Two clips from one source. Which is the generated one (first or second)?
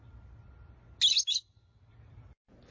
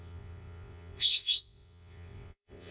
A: second